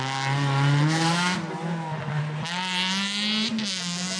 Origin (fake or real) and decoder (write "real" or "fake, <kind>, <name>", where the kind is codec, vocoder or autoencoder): real